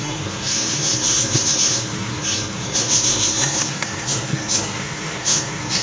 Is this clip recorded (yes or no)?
no